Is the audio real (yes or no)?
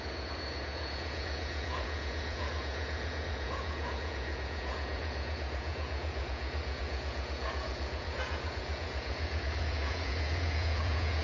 no